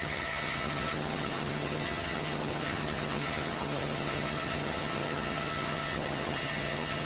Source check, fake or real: fake